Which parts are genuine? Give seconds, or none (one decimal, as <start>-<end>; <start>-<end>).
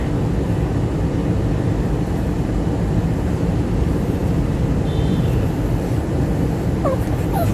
0.0-3.8